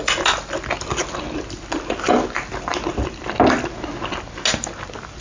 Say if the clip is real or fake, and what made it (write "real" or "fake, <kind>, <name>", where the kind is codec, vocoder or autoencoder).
real